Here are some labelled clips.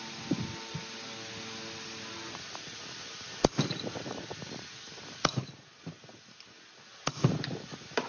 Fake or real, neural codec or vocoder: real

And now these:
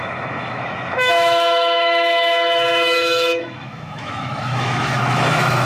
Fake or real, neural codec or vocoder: fake, autoencoder, DAC-VAE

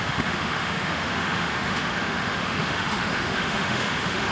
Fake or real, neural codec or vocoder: fake, autoencoder, DAC-VAE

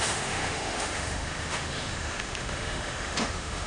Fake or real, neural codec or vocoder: fake, autoencoder, DAC-VAE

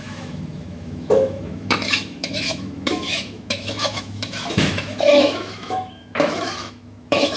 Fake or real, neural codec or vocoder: fake, autoencoder, DAC-VAE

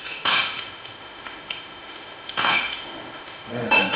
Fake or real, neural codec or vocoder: fake, autoencoder, DAC-VAE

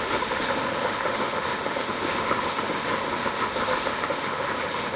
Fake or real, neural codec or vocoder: fake, autoencoder, DAC-VAE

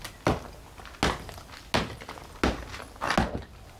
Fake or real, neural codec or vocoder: real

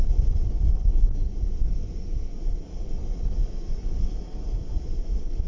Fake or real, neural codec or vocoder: real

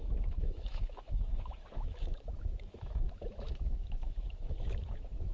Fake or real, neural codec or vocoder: fake, autoencoder, DAC-VAE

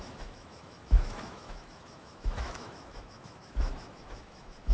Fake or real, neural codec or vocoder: fake, autoencoder, DAC-VAE